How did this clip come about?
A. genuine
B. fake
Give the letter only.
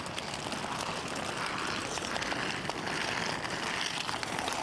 A